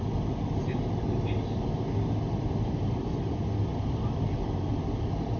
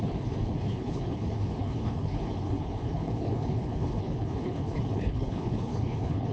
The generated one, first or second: second